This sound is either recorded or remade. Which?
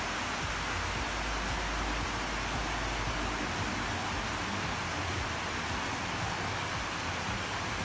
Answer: recorded